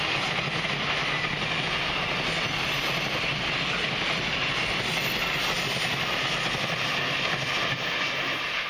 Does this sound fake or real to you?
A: real